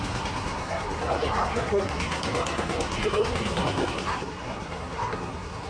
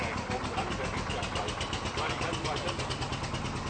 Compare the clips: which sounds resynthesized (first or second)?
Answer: first